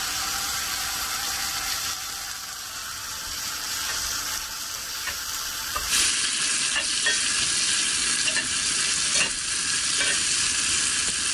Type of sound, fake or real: real